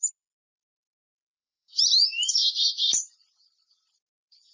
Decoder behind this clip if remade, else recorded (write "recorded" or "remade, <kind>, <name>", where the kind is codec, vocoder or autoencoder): remade, vocoder, BigVGAN v2